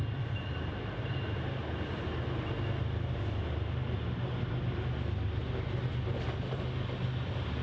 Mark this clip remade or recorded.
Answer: recorded